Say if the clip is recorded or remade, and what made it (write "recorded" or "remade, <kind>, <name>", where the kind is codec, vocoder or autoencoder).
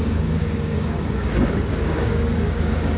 remade, codec, DAC